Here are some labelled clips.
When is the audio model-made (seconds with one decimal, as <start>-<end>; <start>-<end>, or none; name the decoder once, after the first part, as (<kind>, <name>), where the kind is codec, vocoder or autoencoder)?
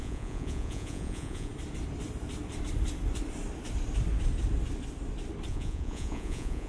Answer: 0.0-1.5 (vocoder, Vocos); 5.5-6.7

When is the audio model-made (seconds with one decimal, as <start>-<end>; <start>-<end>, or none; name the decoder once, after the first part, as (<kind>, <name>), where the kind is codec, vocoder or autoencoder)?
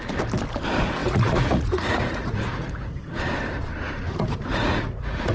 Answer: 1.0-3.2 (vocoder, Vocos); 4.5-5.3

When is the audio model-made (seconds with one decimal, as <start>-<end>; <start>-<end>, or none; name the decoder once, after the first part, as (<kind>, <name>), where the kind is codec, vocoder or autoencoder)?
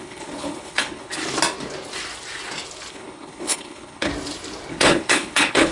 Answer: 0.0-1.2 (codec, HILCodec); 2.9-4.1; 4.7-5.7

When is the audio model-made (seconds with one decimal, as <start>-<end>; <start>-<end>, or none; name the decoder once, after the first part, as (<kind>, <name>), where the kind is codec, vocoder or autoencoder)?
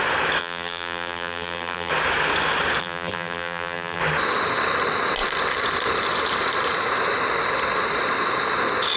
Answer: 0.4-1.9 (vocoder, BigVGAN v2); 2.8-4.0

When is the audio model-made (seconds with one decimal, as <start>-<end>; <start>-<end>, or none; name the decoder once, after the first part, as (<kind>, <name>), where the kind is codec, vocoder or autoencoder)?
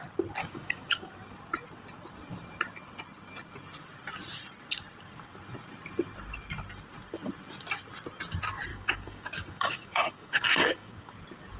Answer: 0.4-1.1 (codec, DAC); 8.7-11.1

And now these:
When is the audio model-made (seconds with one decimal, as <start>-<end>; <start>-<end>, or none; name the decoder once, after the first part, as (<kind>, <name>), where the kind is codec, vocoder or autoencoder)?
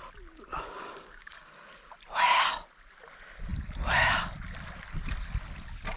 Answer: 0.5-1.5 (codec, DAC)